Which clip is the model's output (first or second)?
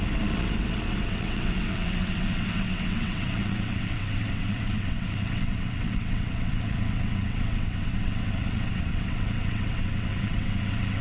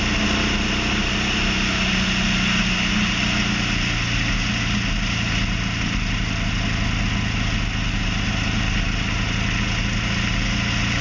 first